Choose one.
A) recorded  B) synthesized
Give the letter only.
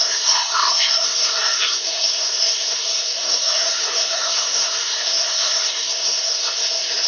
B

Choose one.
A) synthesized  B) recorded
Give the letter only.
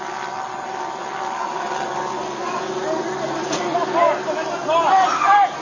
B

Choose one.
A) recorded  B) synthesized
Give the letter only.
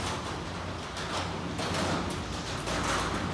A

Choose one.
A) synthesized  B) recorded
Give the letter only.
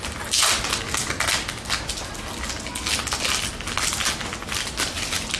B